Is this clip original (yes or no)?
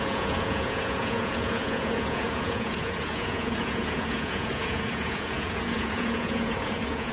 no